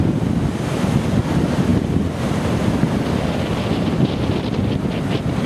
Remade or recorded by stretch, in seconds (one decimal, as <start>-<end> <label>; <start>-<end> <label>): 0.0-5.5 recorded